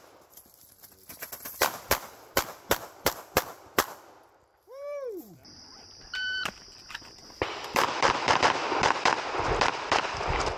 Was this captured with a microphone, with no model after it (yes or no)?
no